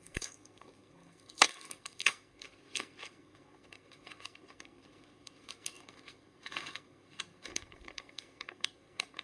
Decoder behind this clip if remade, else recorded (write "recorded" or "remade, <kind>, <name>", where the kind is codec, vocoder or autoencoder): remade, codec, SNAC